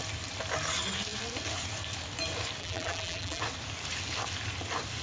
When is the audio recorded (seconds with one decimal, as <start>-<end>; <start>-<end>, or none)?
0.0-2.6; 3.4-5.0